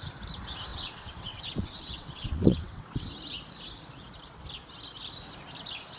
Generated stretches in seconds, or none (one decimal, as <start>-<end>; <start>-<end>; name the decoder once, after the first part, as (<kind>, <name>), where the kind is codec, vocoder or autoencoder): 0.7-3.1 (vocoder, WaveNeXt)